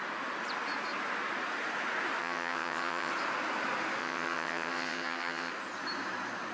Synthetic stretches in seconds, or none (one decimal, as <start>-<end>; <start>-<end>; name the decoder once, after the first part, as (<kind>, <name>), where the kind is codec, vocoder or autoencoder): 2.2-3.1 (vocoder, HiFi-GAN); 4.0-5.5